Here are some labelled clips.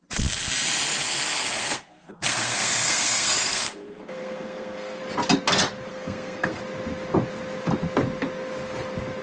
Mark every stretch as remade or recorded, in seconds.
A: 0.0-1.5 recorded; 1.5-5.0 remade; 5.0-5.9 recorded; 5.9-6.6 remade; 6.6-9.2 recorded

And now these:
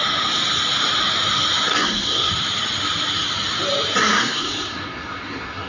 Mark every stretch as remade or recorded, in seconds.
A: 0.0-1.7 recorded; 1.7-2.3 remade; 2.3-4.0 recorded; 4.0-5.7 remade